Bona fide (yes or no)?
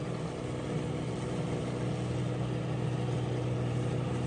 yes